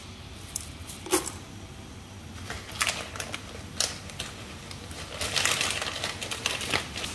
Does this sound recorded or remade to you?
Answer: recorded